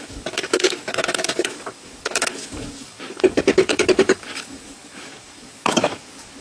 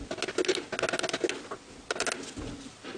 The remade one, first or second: first